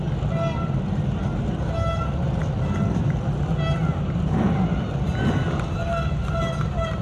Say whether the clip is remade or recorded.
recorded